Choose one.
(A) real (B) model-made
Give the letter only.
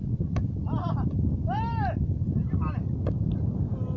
A